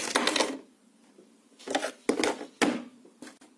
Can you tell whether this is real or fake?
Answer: real